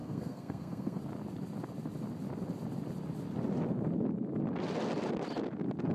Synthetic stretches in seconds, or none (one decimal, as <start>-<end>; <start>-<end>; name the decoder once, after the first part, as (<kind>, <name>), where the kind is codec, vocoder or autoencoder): 0.0-1.0 (codec, SNAC)